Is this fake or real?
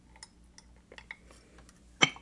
real